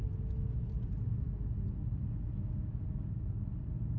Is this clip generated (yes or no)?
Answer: no